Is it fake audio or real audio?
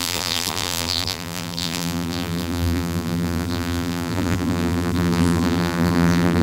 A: fake